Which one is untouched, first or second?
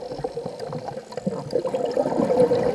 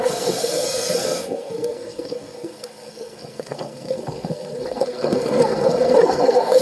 first